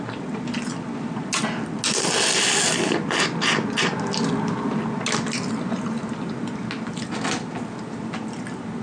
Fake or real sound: real